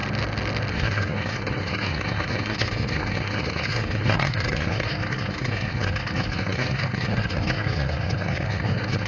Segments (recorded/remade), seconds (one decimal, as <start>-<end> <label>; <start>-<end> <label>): 0.0-0.7 recorded; 0.7-9.1 remade